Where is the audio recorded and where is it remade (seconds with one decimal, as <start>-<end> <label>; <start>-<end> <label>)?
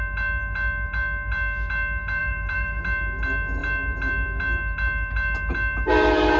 0.0-2.2 recorded; 2.2-2.8 remade; 2.8-6.4 recorded